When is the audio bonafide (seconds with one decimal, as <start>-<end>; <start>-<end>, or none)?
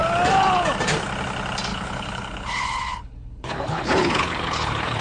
0.0-1.7